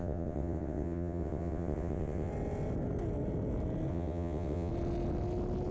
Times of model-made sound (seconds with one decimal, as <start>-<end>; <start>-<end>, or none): 0.0-2.3; 3.9-4.7